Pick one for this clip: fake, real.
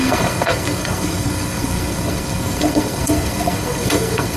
fake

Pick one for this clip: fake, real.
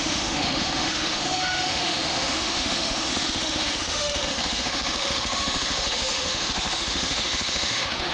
fake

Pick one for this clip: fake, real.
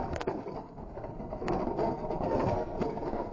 fake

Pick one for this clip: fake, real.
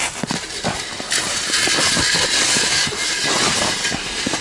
real